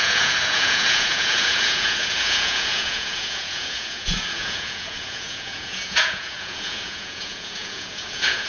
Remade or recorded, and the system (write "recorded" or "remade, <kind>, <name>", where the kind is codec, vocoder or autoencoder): remade, vocoder, Vocos